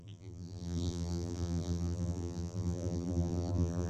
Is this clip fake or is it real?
fake